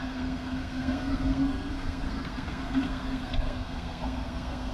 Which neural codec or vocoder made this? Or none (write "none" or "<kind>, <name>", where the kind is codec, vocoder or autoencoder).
codec, SNAC